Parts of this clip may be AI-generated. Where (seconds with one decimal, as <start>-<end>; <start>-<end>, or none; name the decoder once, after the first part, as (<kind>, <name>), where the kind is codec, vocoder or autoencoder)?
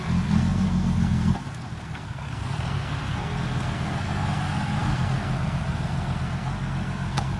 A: 0.0-7.4 (codec, SNAC)